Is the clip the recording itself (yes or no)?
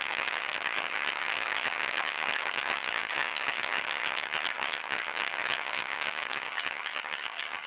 no